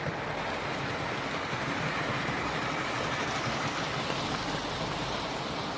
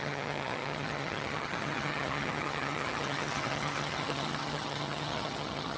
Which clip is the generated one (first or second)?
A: second